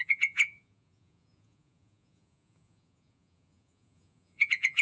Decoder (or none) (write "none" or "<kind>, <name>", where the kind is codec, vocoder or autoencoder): vocoder, Vocos